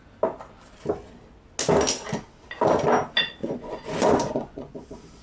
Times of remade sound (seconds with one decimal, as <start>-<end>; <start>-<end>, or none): 3.4-4.7